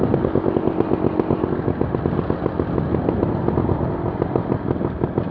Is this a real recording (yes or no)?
yes